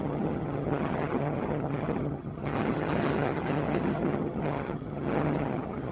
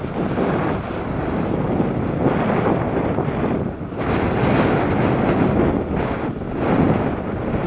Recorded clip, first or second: second